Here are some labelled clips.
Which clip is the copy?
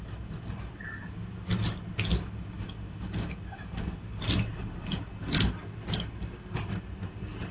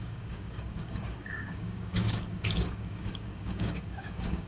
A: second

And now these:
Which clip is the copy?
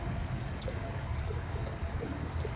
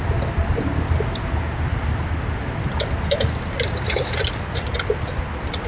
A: first